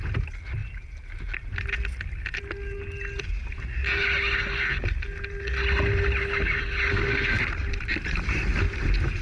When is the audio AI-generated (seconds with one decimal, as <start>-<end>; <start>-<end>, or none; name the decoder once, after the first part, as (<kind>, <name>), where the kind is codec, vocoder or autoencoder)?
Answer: 6.9-7.4 (codec, SNAC)